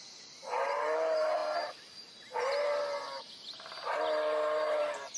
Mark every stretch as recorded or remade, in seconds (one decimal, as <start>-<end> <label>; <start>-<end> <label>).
0.0-5.2 recorded